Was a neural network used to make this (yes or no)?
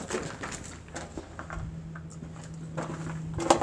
no